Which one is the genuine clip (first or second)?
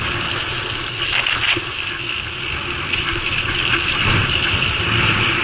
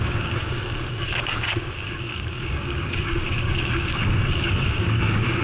first